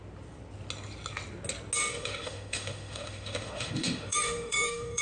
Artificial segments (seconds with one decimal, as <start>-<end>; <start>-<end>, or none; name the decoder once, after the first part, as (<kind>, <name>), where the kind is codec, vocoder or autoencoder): 1.8-5.0 (autoencoder, DAC-VAE)